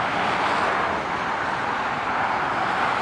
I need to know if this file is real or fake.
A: real